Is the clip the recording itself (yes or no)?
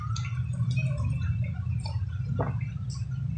yes